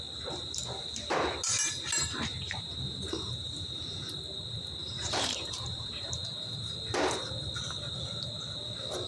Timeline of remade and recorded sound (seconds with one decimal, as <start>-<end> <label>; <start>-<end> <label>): 0.0-2.3 recorded; 2.3-4.2 remade; 4.2-4.8 recorded; 4.8-6.1 remade; 6.1-9.1 recorded